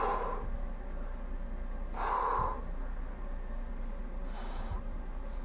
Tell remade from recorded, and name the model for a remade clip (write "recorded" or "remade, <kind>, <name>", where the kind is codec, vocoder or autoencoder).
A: recorded